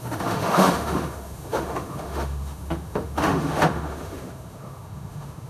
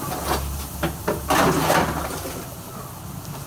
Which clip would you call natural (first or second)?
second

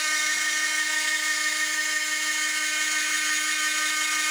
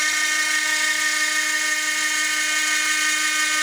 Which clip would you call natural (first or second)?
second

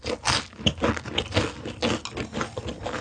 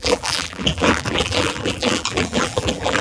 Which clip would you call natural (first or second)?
first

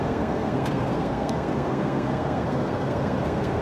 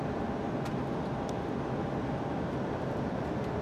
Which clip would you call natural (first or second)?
second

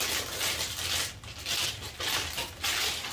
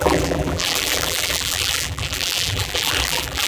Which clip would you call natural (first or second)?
first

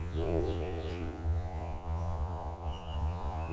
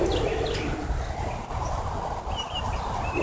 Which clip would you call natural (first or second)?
second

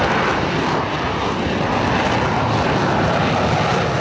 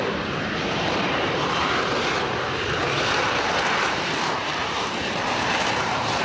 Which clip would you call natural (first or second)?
first